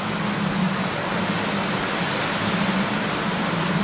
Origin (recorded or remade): recorded